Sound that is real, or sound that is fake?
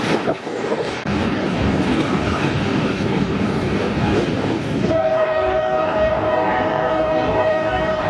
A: fake